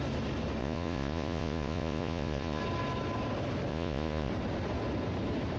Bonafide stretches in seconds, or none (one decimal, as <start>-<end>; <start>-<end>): 0.0-0.6; 2.6-3.7; 4.3-5.6